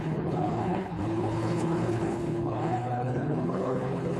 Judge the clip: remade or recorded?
remade